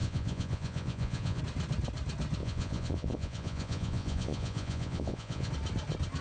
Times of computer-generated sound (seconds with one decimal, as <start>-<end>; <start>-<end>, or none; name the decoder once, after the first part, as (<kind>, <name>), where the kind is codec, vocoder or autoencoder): 0.0-1.4 (vocoder, Vocos); 2.4-5.5